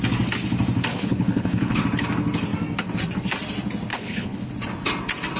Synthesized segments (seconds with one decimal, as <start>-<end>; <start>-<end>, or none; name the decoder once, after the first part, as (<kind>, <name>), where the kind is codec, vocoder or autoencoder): 0.9-1.8 (codec, HILCodec); 3.9-4.5